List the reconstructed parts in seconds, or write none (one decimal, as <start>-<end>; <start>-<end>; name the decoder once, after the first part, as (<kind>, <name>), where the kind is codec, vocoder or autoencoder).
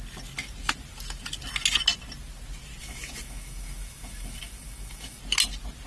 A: 2.8-5.2 (autoencoder, DAC-VAE)